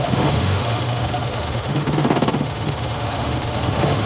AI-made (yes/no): yes